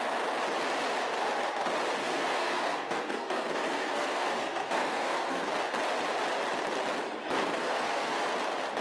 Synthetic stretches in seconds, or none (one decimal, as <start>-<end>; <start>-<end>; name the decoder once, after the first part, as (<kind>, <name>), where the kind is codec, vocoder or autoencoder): 2.0-5.5 (codec, SNAC); 7.4-8.2